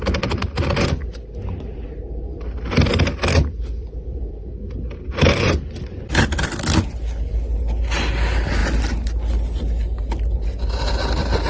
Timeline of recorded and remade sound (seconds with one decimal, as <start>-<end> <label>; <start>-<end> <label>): 0.0-2.3 recorded; 2.3-4.3 remade; 4.3-11.5 recorded